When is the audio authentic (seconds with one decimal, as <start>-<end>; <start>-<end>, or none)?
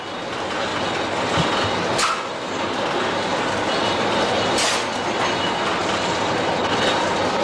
0.0-7.4